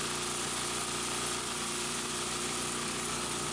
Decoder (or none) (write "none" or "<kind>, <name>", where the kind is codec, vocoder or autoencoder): none